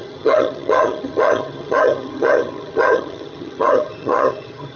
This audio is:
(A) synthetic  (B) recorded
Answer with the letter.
A